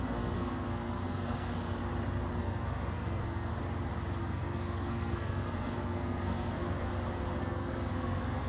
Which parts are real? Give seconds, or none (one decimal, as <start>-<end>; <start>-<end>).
1.8-2.4; 3.5-4.2; 6.9-7.4